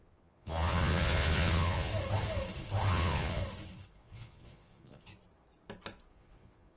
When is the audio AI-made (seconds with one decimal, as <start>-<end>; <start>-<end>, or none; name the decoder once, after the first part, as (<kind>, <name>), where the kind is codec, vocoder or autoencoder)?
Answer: 0.0-1.9 (vocoder, Vocos); 2.9-3.4; 3.9-5.1; 6.1-6.8